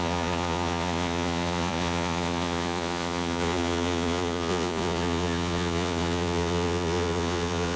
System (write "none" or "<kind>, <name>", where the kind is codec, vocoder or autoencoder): vocoder, Vocos